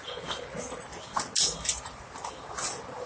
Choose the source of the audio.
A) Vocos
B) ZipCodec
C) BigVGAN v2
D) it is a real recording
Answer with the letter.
D